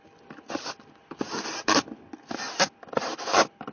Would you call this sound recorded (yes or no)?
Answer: yes